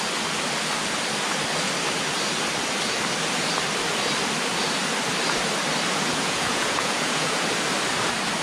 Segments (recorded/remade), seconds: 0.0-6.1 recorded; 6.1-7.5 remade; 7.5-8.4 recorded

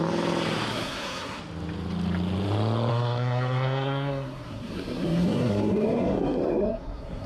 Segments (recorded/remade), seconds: 0.0-0.7 recorded; 0.7-1.4 remade; 1.4-2.9 recorded; 2.9-7.3 remade

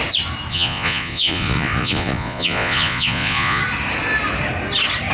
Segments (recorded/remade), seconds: 0.0-0.5 recorded; 0.5-3.6 remade; 3.6-5.1 recorded

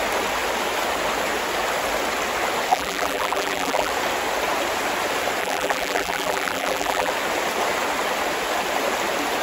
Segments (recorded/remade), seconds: 0.0-2.7 recorded; 2.7-3.9 remade; 3.9-5.4 recorded; 5.4-7.1 remade; 7.1-9.4 recorded